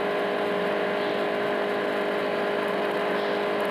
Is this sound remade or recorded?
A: recorded